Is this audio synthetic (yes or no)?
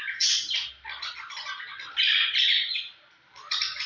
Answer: no